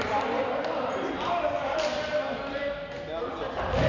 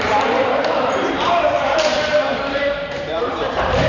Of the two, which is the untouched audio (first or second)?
first